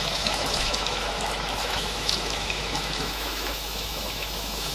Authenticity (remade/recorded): remade